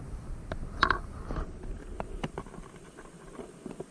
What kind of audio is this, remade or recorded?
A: recorded